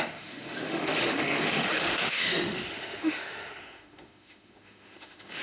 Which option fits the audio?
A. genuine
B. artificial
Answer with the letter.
B